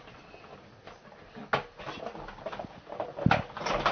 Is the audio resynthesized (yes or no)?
no